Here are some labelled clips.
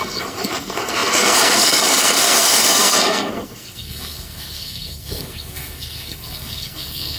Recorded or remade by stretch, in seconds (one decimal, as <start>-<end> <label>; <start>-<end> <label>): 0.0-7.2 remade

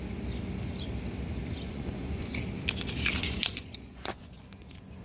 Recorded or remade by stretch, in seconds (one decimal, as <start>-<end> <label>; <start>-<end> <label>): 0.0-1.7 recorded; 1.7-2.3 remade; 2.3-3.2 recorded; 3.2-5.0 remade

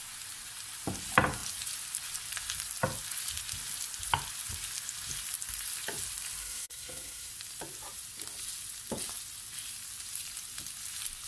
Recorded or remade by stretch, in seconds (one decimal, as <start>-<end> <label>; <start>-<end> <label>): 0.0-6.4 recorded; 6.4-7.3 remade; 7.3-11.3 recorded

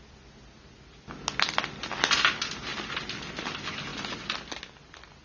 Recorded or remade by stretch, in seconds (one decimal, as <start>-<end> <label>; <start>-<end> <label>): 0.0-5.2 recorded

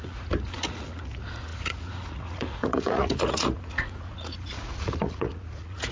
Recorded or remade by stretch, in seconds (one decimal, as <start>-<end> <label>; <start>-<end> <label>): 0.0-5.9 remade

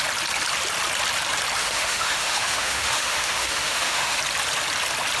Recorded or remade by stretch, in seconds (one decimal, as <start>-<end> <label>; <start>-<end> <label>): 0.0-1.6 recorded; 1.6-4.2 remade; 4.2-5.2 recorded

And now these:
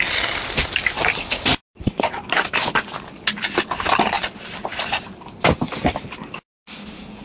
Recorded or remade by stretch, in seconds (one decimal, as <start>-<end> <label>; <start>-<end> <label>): 0.0-7.2 recorded

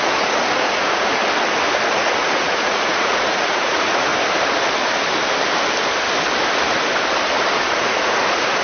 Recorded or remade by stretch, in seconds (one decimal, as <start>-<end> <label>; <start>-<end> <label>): 0.0-1.2 remade; 1.2-1.9 recorded; 1.9-4.1 remade; 4.1-7.6 recorded; 7.6-8.6 remade